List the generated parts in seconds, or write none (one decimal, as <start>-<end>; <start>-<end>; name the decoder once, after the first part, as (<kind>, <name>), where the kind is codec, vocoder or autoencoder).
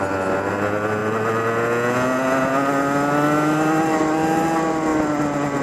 none